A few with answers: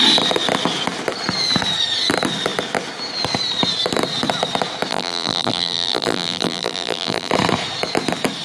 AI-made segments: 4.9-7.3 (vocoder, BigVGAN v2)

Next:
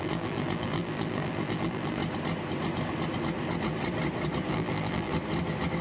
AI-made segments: 0.0-2.0 (vocoder, BigVGAN v2); 4.5-5.1